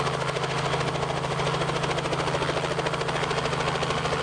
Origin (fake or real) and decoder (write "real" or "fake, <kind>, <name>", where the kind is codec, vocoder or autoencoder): real